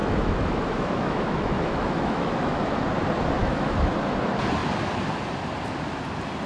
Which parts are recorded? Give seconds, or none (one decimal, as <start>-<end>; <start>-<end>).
2.8-3.4; 3.9-6.5